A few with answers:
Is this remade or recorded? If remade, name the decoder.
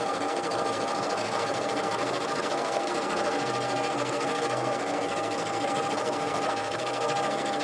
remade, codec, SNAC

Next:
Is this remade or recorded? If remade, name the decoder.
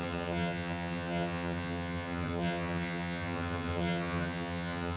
remade, vocoder, HiFi-GAN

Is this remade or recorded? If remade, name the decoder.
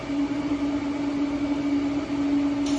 recorded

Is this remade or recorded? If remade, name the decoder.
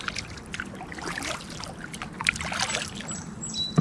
recorded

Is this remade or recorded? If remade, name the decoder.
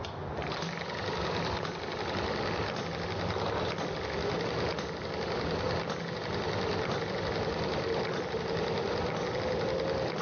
recorded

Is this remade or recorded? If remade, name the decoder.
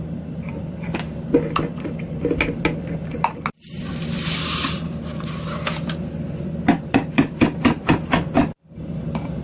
recorded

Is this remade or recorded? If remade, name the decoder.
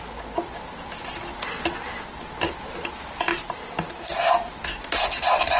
recorded